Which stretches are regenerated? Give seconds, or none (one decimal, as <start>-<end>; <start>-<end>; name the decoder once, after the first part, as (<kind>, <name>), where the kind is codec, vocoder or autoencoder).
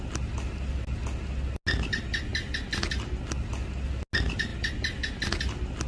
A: none